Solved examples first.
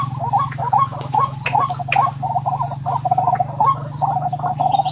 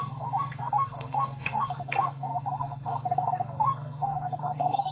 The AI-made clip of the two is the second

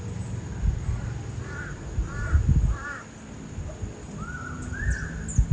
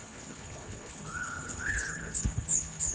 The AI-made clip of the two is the second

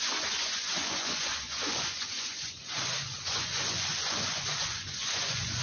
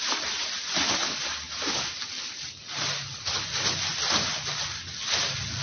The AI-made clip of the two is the first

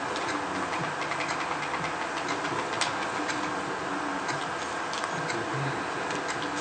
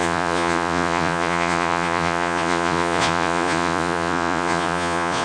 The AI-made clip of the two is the second